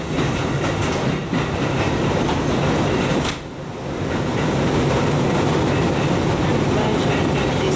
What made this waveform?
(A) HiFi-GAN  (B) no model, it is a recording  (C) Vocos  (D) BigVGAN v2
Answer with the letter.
B